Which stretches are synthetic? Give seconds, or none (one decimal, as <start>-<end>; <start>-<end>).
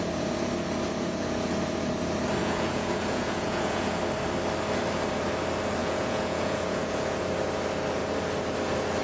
2.4-4.0; 5.8-7.3